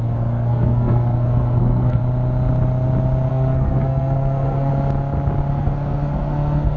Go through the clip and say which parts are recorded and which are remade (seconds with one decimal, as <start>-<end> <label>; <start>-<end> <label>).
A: 0.0-2.0 remade; 2.0-3.3 recorded; 3.3-4.7 remade; 4.7-5.5 recorded; 5.5-6.8 remade